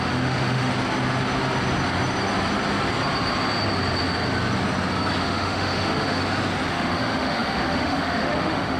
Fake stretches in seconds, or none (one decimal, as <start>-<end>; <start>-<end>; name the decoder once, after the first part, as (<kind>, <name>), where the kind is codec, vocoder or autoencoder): 0.0-0.7 (autoencoder, DAC-VAE); 5.2-6.2; 6.7-8.8